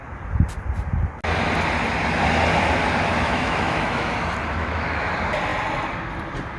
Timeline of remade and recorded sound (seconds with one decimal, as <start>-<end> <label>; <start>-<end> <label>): 0.0-3.1 recorded; 3.1-4.1 remade; 4.1-4.6 recorded; 4.6-5.1 remade; 5.1-6.6 recorded